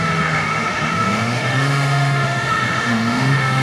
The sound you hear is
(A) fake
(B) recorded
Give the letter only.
A